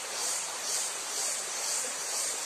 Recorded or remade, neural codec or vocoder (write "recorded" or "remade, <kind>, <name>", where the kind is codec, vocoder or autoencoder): recorded